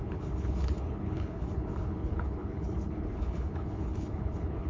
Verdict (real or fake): fake